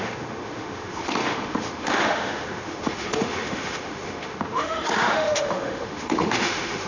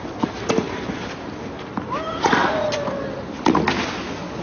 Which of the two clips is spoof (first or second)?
first